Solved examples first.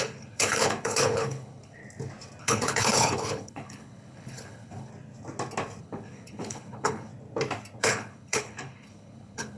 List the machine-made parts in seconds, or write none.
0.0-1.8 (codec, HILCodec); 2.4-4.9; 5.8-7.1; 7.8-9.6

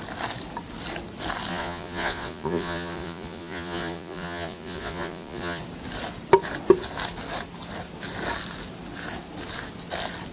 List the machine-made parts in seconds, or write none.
1.5-5.6 (vocoder, Vocos)

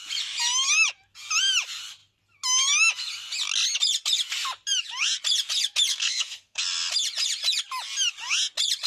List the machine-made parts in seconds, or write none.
5.9-6.6 (codec, SNAC)